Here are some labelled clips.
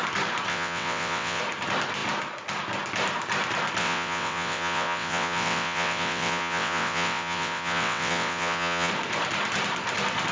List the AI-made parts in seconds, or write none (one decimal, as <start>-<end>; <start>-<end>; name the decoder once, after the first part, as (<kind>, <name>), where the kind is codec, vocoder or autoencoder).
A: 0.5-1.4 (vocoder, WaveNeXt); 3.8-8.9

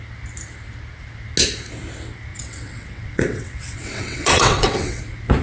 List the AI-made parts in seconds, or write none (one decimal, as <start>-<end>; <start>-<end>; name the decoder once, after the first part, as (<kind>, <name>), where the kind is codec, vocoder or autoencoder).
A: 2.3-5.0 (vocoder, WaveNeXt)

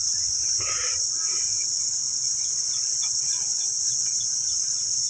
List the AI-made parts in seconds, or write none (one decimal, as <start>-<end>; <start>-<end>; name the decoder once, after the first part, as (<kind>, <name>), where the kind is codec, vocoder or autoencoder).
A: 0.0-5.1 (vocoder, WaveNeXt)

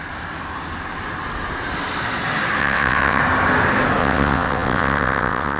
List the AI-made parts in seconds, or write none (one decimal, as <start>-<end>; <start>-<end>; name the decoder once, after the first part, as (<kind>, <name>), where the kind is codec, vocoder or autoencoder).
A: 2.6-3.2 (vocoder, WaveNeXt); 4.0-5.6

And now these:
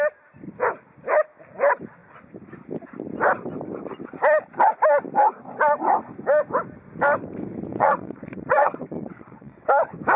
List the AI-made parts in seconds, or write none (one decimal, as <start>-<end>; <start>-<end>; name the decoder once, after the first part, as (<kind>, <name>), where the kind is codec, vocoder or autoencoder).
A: 7.7-9.7 (vocoder, WaveNeXt)

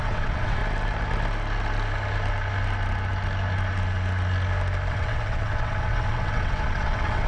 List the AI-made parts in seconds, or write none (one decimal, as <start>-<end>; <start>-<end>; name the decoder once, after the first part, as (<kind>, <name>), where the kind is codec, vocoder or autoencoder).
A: 0.0-0.6 (vocoder, WaveNeXt); 4.9-7.3

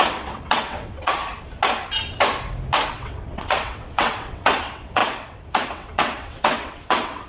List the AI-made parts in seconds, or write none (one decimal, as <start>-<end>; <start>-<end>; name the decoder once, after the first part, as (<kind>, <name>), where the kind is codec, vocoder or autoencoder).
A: 0.0-1.2 (vocoder, WaveNeXt); 2.9-7.3